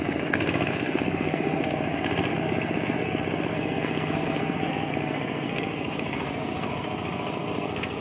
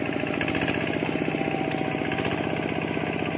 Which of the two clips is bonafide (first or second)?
second